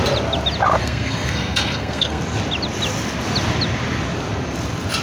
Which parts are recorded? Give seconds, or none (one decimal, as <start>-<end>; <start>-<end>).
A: 0.0-0.8; 2.2-5.0